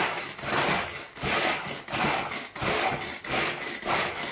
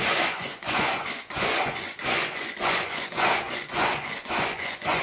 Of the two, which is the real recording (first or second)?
first